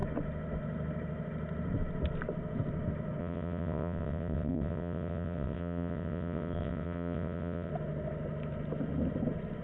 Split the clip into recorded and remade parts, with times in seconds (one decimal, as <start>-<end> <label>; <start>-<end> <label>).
0.0-3.2 recorded; 3.2-7.7 remade; 7.7-9.6 recorded